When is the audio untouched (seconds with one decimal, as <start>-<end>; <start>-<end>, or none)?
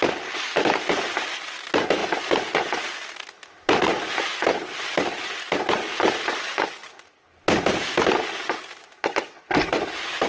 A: 0.0-10.3